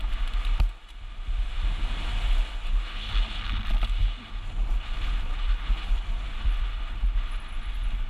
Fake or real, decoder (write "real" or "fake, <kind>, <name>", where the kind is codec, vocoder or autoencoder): real